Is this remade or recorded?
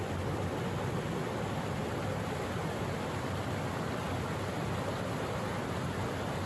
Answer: recorded